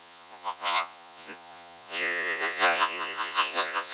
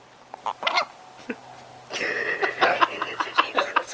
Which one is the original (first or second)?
second